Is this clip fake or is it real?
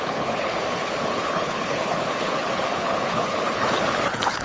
fake